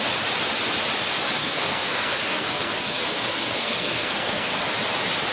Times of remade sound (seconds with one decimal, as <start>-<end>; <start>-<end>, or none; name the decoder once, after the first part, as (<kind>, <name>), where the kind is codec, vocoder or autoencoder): 1.4-4.6 (codec, SNAC)